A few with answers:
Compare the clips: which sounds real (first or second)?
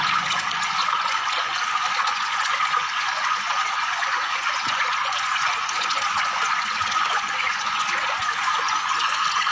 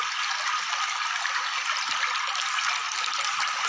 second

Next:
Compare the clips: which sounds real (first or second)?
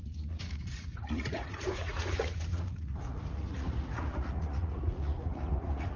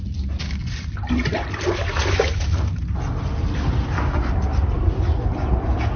second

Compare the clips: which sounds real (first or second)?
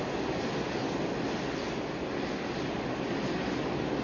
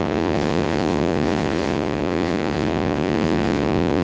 first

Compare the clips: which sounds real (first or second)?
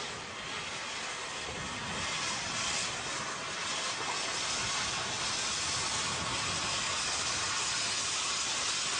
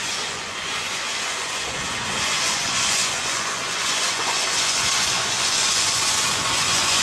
first